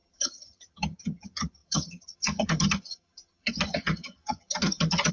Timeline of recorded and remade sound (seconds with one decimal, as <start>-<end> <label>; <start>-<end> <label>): 0.0-5.1 remade